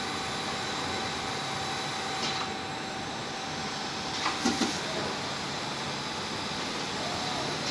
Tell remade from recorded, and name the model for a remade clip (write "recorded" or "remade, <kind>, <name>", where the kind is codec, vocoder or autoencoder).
recorded